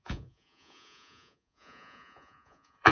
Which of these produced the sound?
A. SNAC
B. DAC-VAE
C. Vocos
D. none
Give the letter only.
C